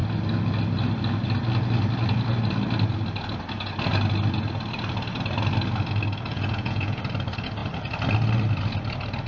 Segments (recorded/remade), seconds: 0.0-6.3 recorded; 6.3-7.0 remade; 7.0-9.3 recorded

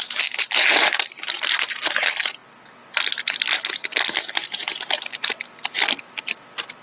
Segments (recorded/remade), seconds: 0.0-6.8 recorded

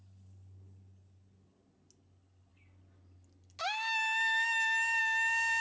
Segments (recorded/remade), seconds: 0.0-5.6 recorded

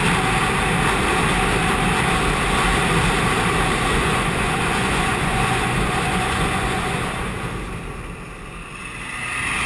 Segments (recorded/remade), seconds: 0.0-3.9 recorded; 3.9-7.3 remade; 7.3-9.7 recorded

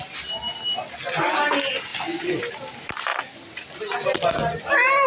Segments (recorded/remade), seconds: 0.0-5.1 recorded